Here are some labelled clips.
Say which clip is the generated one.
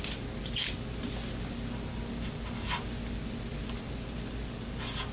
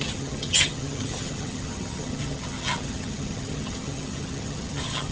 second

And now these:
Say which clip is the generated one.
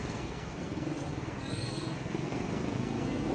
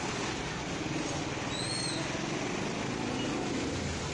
first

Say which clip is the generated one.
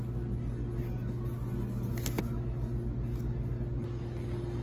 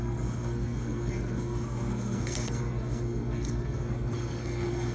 second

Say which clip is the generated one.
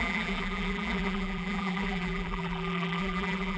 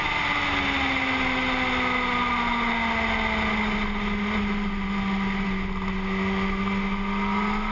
first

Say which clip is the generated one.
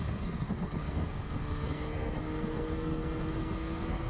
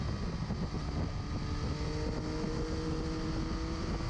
first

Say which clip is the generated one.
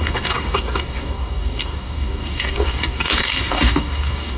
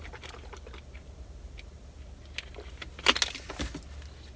first